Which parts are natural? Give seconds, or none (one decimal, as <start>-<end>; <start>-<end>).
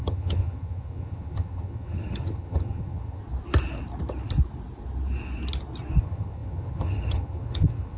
3.2-6.0